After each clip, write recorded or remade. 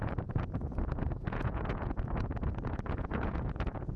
remade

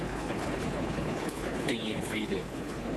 remade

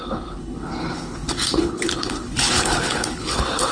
remade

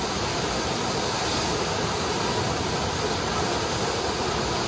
recorded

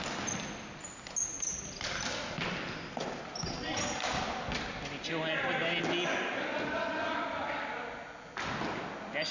recorded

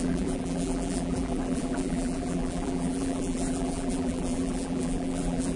remade